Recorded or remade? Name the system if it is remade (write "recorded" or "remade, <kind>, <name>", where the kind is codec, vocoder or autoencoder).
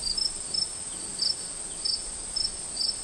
recorded